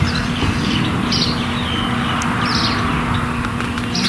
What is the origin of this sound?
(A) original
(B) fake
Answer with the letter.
A